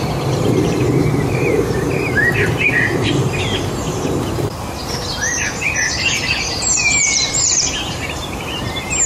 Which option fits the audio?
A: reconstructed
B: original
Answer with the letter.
A